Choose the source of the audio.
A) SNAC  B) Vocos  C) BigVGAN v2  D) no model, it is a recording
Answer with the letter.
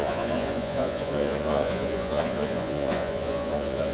B